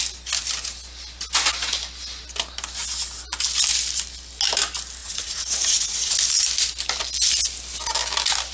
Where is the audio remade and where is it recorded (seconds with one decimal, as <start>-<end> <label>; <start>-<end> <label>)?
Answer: 0.0-5.0 recorded; 5.0-6.1 remade; 6.1-8.5 recorded